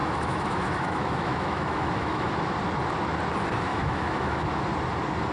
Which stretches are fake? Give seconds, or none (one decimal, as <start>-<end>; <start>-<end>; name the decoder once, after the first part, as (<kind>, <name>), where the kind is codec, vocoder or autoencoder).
0.0-2.3 (autoencoder, DAC-VAE); 3.7-4.5